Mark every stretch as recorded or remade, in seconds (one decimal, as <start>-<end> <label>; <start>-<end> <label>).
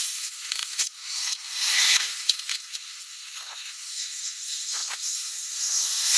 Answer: 0.0-6.2 remade